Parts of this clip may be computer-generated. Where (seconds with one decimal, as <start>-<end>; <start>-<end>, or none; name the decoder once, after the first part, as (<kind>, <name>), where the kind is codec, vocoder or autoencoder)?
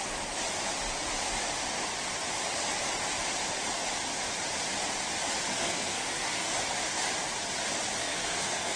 5.5-6.5 (codec, SNAC); 8.0-8.8